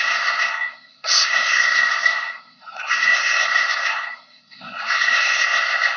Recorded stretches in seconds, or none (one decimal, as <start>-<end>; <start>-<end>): none